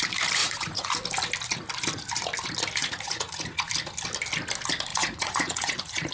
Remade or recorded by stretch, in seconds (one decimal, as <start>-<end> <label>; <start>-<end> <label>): 0.0-0.4 recorded; 0.4-0.9 remade; 0.9-2.8 recorded; 2.8-3.7 remade; 3.7-4.9 recorded; 4.9-6.1 remade